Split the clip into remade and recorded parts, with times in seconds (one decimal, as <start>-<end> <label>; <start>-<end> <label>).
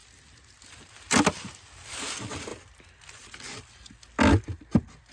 0.0-5.1 recorded